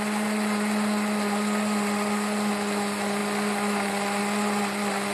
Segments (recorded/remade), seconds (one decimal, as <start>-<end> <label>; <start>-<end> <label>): 0.0-5.1 recorded